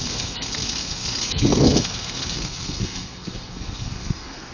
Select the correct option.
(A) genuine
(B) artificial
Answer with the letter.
B